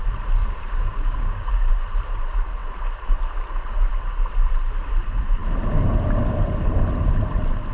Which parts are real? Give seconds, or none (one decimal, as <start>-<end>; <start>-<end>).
0.0-0.4; 1.7-7.7